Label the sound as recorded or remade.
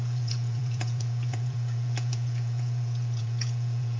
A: remade